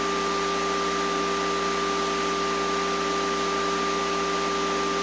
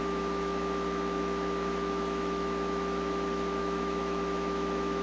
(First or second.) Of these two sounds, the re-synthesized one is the second